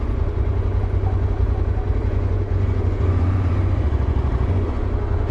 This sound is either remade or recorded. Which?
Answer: remade